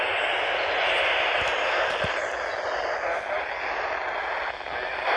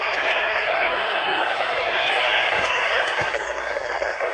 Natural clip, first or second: first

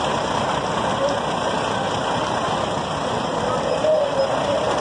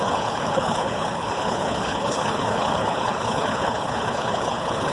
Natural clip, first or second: first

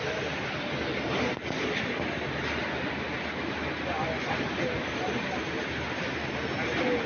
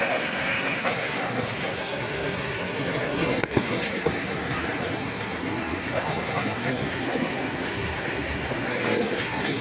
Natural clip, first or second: first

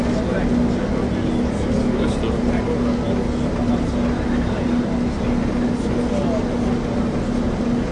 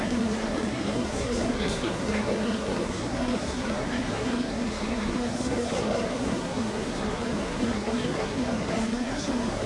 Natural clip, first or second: first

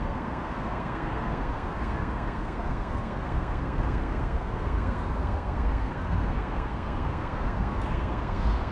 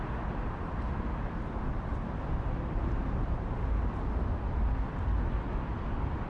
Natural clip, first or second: second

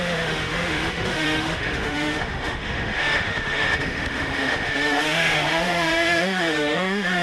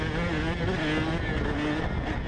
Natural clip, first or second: second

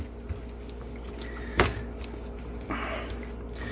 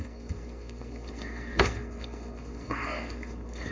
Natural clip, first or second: first